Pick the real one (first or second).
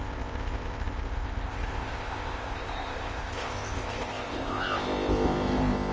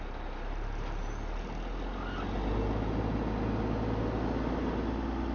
second